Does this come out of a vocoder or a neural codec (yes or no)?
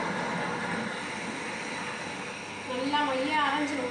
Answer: no